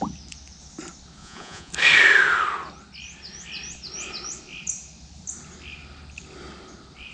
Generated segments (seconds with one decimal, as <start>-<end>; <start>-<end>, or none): 1.2-1.7